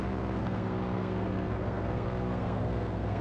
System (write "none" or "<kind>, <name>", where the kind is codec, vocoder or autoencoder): codec, SNAC